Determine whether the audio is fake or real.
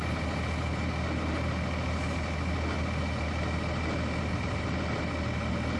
real